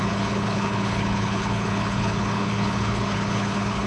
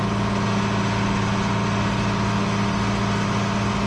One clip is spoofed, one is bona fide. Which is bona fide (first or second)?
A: second